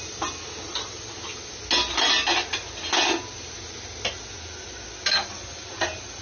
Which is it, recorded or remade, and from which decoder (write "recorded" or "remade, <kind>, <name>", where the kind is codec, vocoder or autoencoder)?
recorded